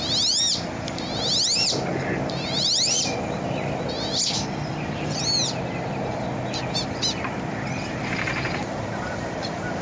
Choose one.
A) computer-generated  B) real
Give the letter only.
A